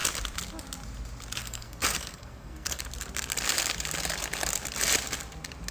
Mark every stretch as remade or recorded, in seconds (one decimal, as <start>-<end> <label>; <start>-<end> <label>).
0.0-1.4 recorded; 1.4-2.8 remade; 2.8-5.7 recorded